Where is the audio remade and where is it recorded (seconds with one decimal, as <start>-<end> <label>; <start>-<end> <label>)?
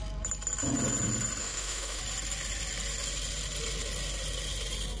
0.0-1.4 recorded; 1.4-2.0 remade; 2.0-5.0 recorded